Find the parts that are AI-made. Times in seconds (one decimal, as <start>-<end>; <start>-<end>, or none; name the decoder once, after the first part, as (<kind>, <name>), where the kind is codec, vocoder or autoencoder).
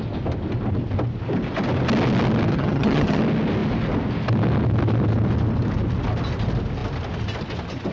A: 2.5-3.2 (vocoder, HiFi-GAN)